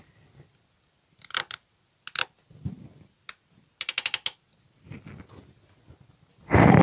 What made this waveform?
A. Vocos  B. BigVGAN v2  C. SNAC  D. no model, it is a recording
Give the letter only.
D